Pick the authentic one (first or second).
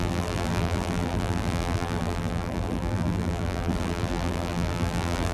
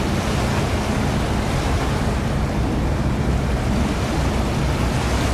second